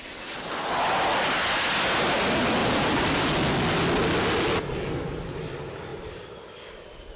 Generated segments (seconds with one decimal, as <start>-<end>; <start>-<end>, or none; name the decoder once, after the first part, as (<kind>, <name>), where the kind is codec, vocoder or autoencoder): 2.6-3.3 (vocoder, BigVGAN v2); 5.9-7.2